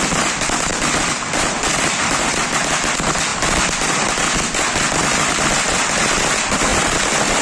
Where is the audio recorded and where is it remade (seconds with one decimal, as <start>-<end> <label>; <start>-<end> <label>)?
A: 0.0-3.3 recorded; 3.3-3.9 remade; 3.9-7.4 recorded